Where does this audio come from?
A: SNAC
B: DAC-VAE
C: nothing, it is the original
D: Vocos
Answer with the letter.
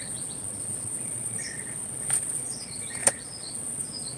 D